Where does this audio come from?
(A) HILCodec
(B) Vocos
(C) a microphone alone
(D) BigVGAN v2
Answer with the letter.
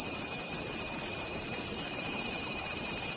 C